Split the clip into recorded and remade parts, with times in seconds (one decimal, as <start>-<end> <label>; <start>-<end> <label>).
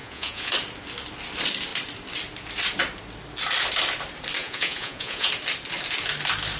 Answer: 0.0-0.5 remade; 0.5-4.4 recorded; 4.4-5.3 remade; 5.3-6.6 recorded